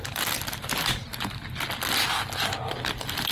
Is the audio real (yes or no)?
yes